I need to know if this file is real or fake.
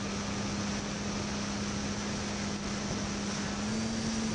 real